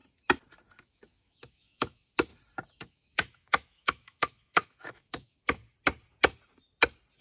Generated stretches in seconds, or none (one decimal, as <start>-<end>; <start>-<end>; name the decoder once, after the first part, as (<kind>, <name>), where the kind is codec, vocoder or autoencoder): 0.8-2.3 (autoencoder, DAC-VAE); 2.8-5.6